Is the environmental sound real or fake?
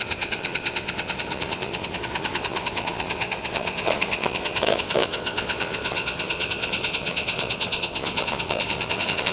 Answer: fake